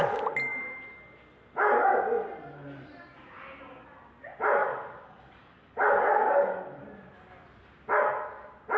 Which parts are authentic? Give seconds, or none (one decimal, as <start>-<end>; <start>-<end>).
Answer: 0.0-4.6; 6.8-8.8